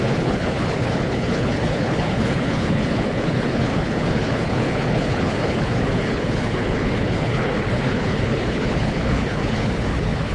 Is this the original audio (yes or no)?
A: no